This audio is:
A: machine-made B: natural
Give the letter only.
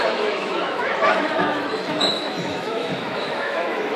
A